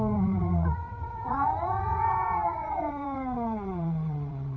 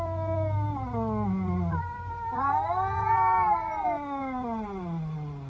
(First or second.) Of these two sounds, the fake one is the first